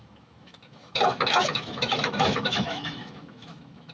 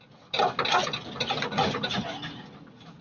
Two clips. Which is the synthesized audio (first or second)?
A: first